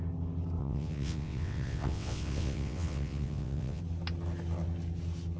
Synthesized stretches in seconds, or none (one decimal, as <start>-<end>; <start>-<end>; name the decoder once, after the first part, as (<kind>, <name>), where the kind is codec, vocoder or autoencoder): 0.6-3.8 (vocoder, WaveNeXt)